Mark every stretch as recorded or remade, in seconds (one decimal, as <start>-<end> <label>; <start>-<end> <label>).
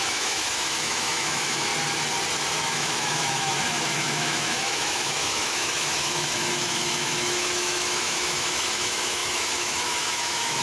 0.0-1.7 remade; 1.7-2.6 recorded; 2.6-10.6 remade